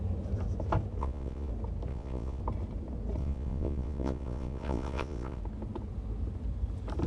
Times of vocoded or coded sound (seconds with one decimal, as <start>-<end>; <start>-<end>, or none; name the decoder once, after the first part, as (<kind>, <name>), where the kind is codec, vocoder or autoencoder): 1.0-1.5 (vocoder, Vocos); 1.9-2.4; 3.2-5.4